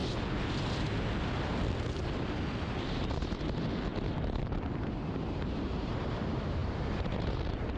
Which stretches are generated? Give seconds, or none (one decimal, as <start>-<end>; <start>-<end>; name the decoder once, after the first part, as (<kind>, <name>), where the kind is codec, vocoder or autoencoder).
2.6-3.9 (vocoder, BigVGAN v2); 5.1-7.8